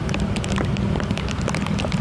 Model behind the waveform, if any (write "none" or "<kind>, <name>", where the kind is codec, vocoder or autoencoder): none